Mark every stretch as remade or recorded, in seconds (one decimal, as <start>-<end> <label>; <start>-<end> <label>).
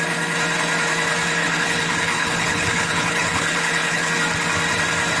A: 0.0-1.4 recorded; 1.4-4.1 remade; 4.1-5.2 recorded